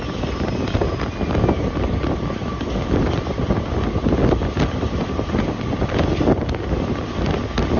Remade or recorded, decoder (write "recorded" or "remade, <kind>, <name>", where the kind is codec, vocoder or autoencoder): recorded